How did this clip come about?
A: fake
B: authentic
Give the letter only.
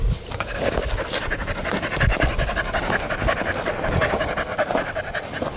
B